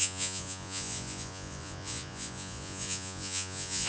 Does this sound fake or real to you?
fake